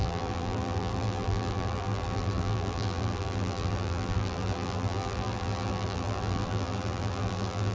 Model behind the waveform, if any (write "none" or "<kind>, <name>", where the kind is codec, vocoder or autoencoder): vocoder, BigVGAN v2